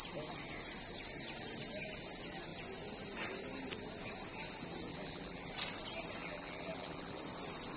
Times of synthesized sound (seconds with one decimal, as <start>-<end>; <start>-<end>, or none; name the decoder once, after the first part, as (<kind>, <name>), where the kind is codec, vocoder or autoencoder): 4.9-5.5 (vocoder, BigVGAN v2); 6.2-7.2